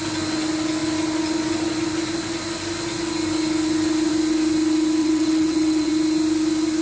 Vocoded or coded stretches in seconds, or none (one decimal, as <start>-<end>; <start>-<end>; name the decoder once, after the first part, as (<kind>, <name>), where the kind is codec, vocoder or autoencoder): 5.0-5.9 (vocoder, WaveNeXt)